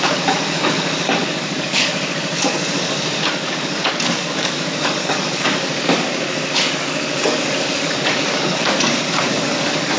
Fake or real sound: fake